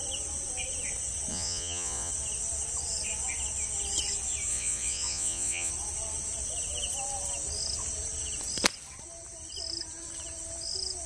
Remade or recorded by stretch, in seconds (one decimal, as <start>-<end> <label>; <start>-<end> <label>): 0.0-1.3 recorded; 1.3-2.1 remade; 2.1-4.5 recorded; 4.5-5.7 remade; 5.7-11.1 recorded